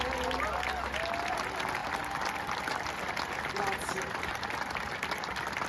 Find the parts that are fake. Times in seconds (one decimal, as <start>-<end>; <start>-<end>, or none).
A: none